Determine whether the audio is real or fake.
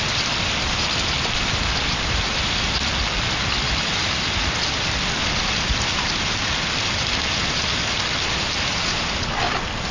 real